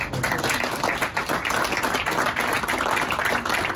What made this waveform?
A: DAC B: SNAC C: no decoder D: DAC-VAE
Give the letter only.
C